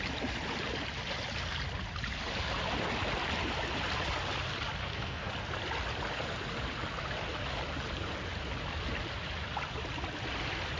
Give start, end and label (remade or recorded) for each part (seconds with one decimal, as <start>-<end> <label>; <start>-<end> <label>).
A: 0.0-4.8 recorded; 4.8-5.3 remade; 5.3-10.8 recorded